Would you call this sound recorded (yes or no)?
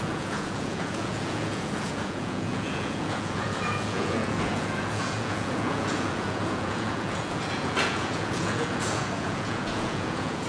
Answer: no